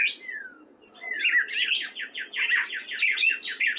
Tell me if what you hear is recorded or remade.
recorded